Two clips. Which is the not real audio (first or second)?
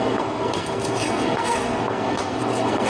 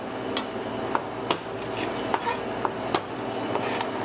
first